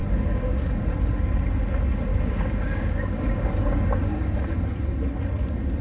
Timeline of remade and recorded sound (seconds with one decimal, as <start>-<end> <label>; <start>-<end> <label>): 0.0-0.8 remade; 0.8-2.1 recorded; 2.1-4.2 remade; 4.2-5.8 recorded